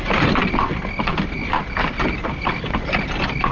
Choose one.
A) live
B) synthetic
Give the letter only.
A